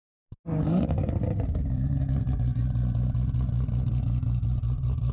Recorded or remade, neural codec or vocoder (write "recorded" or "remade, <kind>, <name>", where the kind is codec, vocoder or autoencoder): recorded